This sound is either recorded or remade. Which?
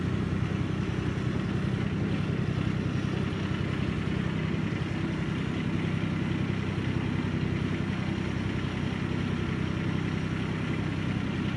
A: recorded